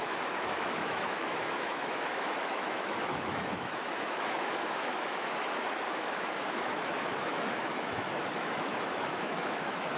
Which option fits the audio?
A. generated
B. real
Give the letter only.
A